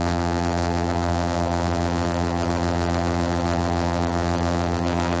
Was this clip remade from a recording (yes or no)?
yes